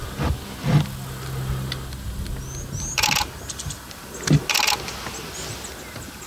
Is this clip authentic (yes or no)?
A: yes